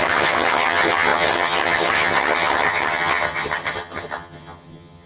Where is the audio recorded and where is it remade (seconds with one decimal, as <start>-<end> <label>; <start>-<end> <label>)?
0.0-5.1 remade